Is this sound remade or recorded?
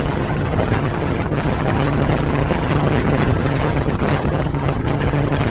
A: remade